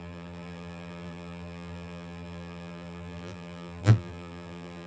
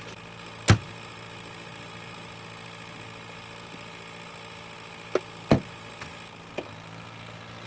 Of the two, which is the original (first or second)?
second